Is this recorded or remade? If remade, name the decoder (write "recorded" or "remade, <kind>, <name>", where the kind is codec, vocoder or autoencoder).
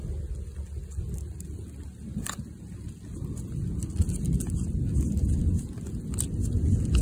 recorded